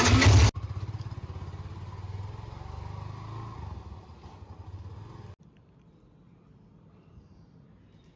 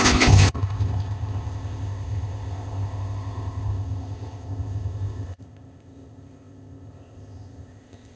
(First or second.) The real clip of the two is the first